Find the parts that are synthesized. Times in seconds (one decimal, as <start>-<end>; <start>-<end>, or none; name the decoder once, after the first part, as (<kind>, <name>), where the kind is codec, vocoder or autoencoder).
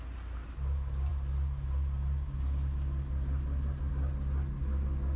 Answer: none